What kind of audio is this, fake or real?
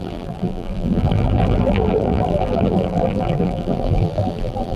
fake